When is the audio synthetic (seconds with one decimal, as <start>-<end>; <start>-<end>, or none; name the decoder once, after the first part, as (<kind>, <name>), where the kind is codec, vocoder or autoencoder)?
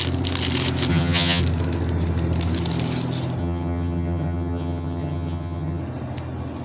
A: 0.9-1.4 (vocoder, HiFi-GAN); 3.4-5.8